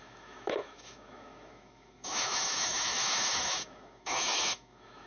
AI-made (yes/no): yes